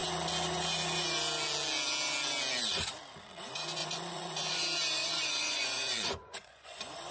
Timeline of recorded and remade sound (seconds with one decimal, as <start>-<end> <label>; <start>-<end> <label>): 0.0-3.8 recorded; 3.8-4.6 remade; 4.6-5.0 recorded; 5.0-7.1 remade